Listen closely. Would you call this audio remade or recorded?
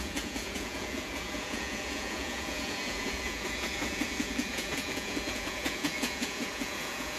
remade